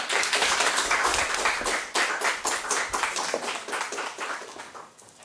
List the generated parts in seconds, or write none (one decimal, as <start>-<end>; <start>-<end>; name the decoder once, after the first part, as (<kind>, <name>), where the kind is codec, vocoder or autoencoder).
0.0-1.1 (codec, DAC); 4.2-5.2